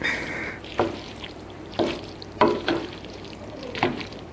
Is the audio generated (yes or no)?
yes